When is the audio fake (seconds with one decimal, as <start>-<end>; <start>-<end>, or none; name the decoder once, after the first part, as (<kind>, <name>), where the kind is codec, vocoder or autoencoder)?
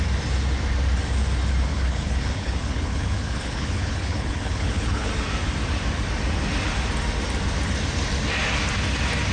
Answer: 1.7-5.1 (codec, HILCodec)